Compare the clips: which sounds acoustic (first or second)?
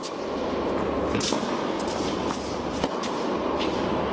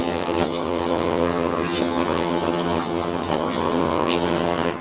first